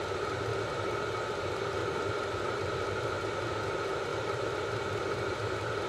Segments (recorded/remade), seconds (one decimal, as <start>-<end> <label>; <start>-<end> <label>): 0.0-1.8 recorded; 1.8-3.2 remade; 3.2-4.1 recorded; 4.1-5.9 remade